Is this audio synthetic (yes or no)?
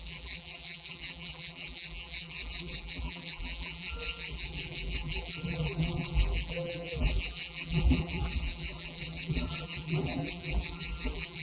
yes